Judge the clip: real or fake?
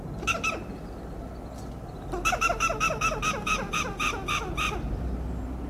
real